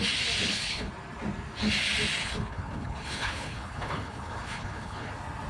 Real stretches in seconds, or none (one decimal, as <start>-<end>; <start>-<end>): 0.0-0.4; 0.9-2.2; 5.1-5.5